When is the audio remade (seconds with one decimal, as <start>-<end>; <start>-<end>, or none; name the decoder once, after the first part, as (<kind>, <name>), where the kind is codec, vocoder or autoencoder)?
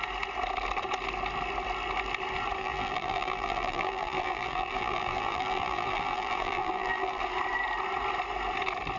2.6-7.2 (vocoder, BigVGAN v2)